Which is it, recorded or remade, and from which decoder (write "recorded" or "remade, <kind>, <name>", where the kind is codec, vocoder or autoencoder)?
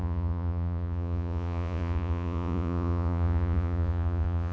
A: remade, vocoder, Vocos